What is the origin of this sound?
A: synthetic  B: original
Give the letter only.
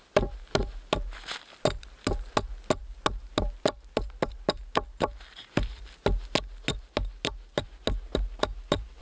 B